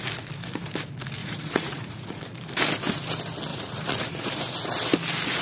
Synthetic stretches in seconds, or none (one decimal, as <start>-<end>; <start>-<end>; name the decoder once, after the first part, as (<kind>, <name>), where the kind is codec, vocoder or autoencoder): 1.2-2.2 (vocoder, Vocos); 3.5-4.3